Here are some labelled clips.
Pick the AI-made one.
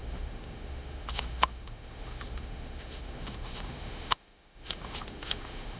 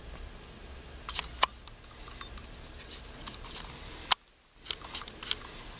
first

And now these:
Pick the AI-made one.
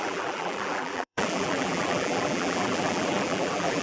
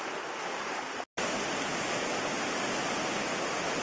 first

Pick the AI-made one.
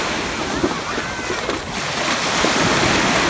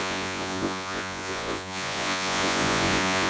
second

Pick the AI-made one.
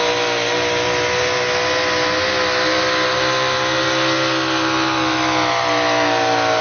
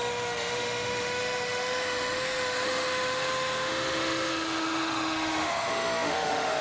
second